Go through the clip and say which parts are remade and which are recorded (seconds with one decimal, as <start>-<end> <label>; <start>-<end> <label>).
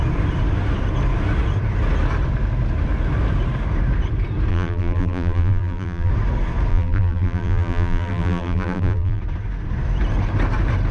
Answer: 0.0-4.5 recorded; 4.5-6.1 remade; 6.1-6.7 recorded; 6.7-9.2 remade; 9.2-10.9 recorded